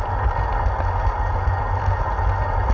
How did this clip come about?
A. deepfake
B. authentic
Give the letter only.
B